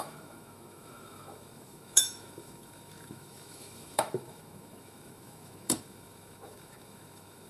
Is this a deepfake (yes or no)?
yes